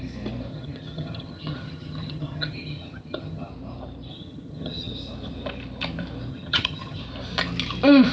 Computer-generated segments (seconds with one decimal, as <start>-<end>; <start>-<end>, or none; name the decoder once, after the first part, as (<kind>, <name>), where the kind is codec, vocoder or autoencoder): 0.5-3.5 (vocoder, HiFi-GAN); 4.1-4.9; 6.3-7.0